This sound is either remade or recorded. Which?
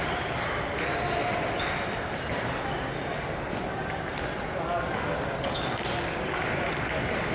recorded